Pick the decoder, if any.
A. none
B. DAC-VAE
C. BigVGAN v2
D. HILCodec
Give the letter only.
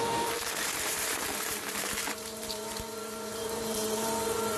C